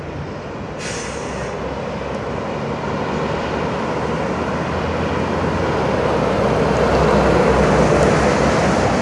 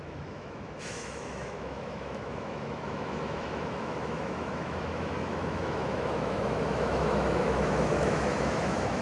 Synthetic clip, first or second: second